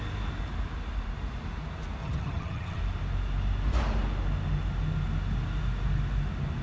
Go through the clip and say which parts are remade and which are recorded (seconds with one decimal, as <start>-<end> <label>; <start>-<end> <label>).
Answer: 0.0-2.0 recorded; 2.0-2.8 remade; 2.8-6.6 recorded